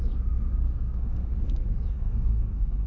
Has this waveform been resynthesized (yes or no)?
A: yes